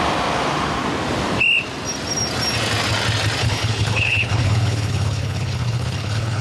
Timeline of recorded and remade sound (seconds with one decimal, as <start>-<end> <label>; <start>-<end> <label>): 0.0-3.4 recorded; 3.4-6.4 remade